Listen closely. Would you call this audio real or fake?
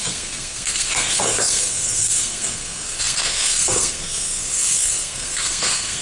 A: fake